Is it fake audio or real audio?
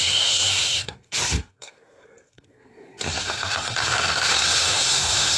fake